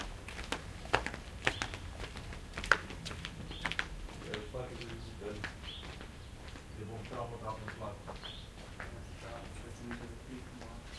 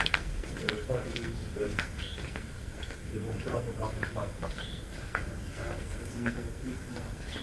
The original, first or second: first